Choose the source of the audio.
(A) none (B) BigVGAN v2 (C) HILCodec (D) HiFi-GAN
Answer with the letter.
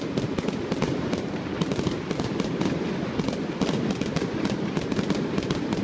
B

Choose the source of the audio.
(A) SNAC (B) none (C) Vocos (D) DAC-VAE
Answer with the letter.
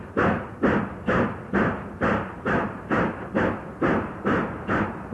B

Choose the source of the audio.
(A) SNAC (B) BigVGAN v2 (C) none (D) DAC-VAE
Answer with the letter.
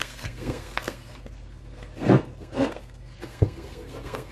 A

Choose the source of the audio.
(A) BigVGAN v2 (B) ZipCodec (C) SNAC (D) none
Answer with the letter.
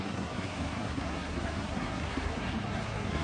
C